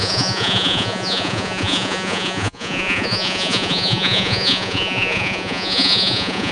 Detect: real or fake fake